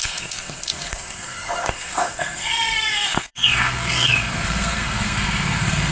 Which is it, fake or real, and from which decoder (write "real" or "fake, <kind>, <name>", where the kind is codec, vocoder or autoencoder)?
fake, codec, SNAC